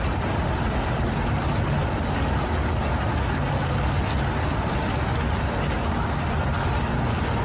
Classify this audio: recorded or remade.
recorded